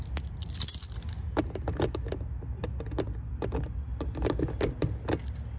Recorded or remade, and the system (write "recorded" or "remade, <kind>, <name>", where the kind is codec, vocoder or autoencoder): recorded